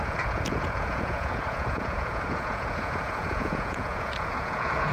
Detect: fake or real fake